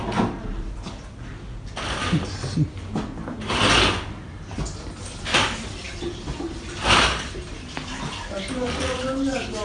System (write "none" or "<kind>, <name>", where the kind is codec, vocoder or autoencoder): none